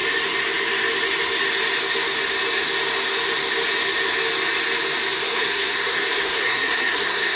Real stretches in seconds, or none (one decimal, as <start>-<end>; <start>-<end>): 0.0-5.1